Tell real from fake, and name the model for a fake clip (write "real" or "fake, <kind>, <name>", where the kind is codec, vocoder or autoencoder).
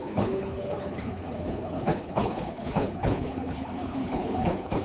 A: fake, codec, HILCodec